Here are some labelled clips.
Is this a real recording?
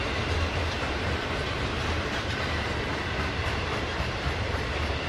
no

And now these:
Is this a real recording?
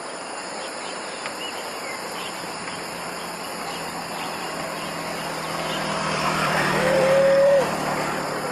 no